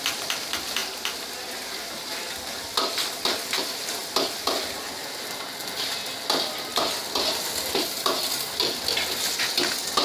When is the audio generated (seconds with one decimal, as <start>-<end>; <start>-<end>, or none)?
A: none